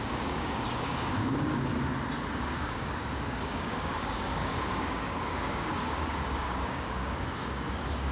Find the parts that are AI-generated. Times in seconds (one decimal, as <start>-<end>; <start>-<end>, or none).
0.0-1.7; 2.3-8.1